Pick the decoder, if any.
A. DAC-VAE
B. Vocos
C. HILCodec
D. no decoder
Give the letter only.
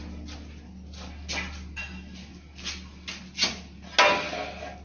D